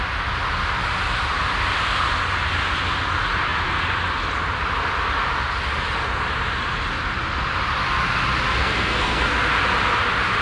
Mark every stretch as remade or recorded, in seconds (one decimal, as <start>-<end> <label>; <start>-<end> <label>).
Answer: 0.0-8.6 recorded; 8.6-9.3 remade; 9.3-10.4 recorded